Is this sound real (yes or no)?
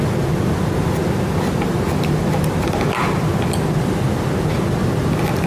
yes